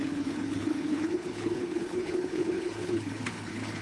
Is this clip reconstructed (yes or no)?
yes